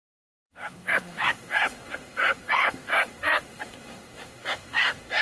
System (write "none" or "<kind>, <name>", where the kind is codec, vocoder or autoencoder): codec, SNAC